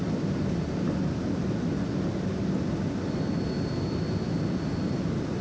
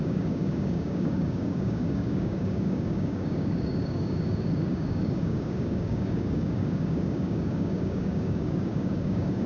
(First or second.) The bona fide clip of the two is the first